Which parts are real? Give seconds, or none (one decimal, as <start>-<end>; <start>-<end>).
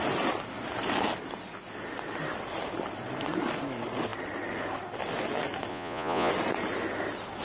0.0-5.7; 6.3-7.4